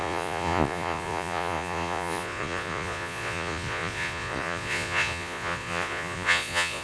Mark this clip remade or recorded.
remade